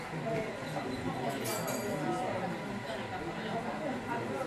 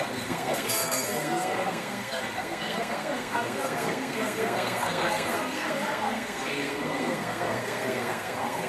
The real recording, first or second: first